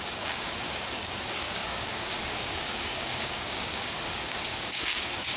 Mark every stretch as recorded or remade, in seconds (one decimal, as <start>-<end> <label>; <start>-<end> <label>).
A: 0.0-5.4 remade